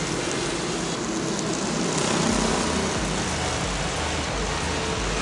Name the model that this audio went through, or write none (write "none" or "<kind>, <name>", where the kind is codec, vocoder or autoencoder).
none